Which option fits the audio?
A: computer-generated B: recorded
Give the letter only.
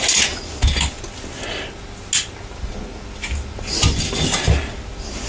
B